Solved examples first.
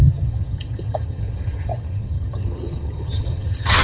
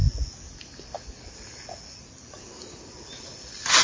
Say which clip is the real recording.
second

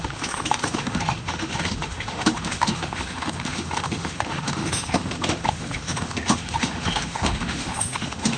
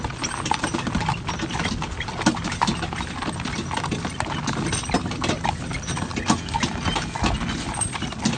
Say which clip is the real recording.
second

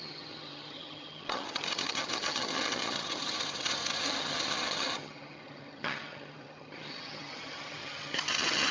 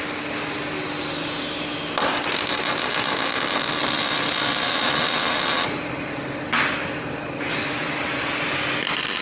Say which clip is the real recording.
second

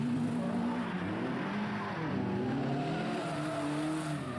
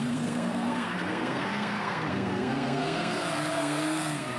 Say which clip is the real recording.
first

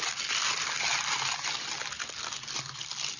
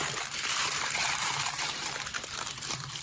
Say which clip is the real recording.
first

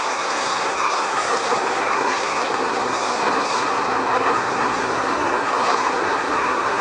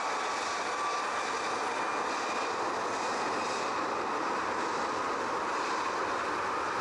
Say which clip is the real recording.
second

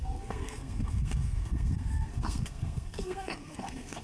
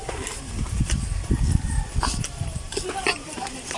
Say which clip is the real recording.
second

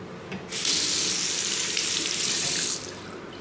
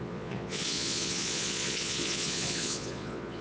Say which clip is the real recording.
first